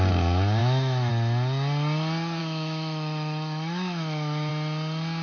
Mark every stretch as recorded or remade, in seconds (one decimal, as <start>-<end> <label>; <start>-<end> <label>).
0.0-0.6 recorded; 0.6-1.1 remade; 1.1-2.4 recorded; 2.4-4.5 remade; 4.5-5.2 recorded